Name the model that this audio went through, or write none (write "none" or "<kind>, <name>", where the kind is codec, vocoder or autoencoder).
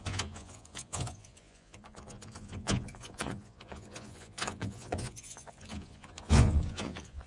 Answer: vocoder, Vocos